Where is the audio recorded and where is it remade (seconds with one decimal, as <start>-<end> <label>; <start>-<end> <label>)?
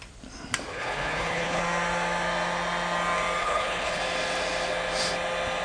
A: 0.0-0.7 recorded; 0.7-1.6 remade; 1.6-3.4 recorded; 3.4-4.0 remade; 4.0-5.6 recorded